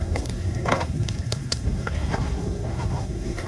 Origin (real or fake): fake